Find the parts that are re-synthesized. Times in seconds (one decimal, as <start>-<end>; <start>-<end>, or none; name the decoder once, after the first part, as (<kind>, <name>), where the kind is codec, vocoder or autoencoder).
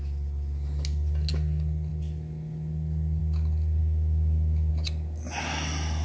3.8-4.7 (autoencoder, DAC-VAE)